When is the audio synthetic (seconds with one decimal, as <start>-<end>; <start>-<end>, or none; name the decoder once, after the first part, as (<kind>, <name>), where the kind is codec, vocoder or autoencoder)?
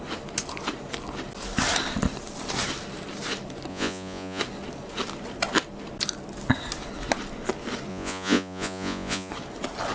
3.7-4.4 (vocoder, Vocos); 7.9-9.3